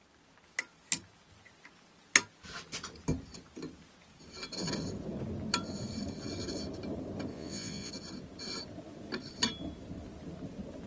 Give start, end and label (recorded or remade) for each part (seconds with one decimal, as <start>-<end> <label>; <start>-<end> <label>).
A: 0.0-7.3 recorded; 7.3-7.9 remade; 7.9-10.9 recorded